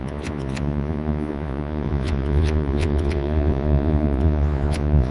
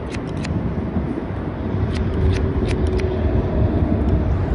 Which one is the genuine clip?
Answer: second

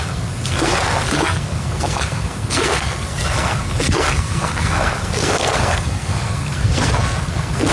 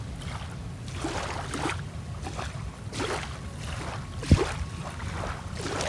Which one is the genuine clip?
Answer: second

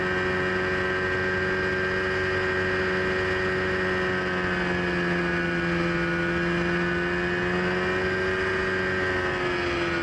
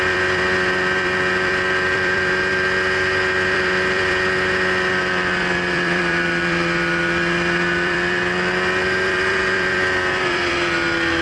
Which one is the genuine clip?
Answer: first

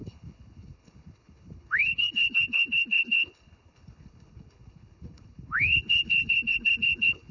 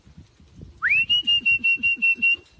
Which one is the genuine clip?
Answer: second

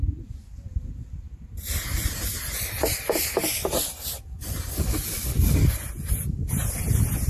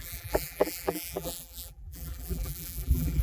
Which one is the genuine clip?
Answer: first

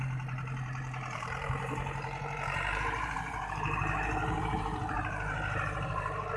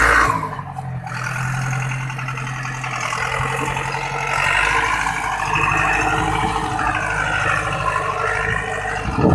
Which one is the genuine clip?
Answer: second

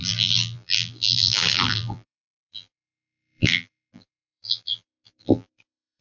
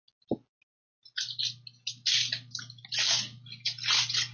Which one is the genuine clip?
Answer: second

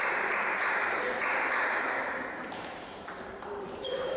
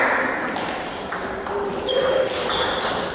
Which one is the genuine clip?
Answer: second